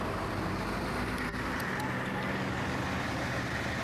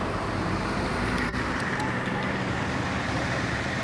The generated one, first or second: second